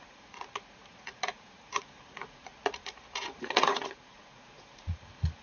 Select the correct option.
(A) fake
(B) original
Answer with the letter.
A